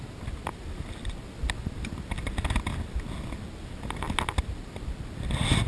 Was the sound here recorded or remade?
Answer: recorded